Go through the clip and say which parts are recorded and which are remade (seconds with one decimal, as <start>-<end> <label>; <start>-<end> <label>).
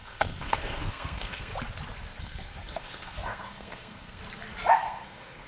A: 0.0-1.5 remade; 1.5-2.2 recorded; 2.2-4.2 remade; 4.2-4.7 recorded; 4.7-5.5 remade